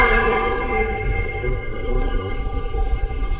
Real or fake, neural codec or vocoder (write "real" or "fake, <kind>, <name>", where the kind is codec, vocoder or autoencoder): fake, codec, SNAC